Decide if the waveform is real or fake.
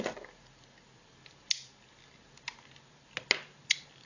real